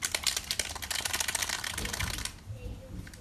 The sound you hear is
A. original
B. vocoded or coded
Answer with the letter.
A